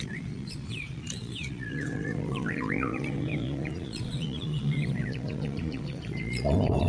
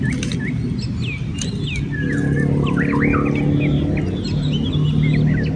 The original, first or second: second